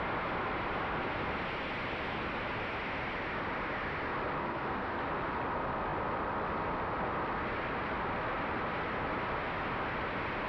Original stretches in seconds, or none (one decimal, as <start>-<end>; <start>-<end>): 0.0-4.4; 5.0-10.5